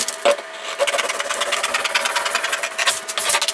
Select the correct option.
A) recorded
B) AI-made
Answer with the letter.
A